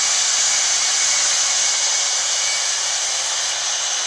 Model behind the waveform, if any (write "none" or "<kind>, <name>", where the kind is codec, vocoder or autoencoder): none